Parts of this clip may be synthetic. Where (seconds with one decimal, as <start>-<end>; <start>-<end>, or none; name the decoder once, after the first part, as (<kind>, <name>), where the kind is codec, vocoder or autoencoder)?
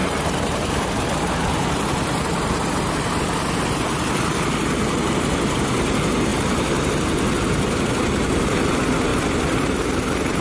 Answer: 6.3-6.9 (vocoder, BigVGAN v2)